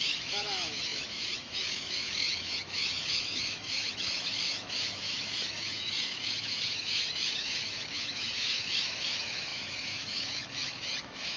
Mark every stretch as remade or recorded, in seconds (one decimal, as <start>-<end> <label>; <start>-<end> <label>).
0.0-11.4 remade